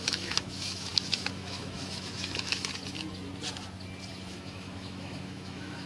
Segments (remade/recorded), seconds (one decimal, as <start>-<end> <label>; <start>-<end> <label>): 0.0-2.7 remade; 2.7-4.3 recorded; 4.3-5.9 remade